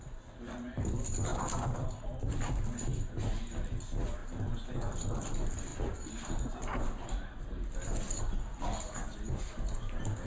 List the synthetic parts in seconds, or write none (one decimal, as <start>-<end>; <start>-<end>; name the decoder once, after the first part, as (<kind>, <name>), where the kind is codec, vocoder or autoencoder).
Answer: none